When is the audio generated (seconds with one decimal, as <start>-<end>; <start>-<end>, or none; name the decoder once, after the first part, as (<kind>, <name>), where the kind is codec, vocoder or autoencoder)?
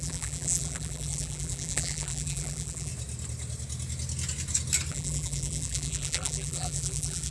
0.0-2.9 (vocoder, BigVGAN v2); 4.9-7.3